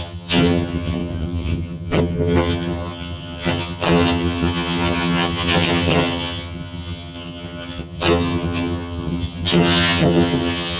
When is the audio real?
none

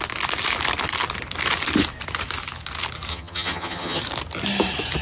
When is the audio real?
0.0-3.1; 4.0-5.0

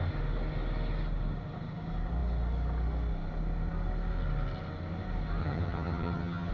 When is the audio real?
0.0-5.4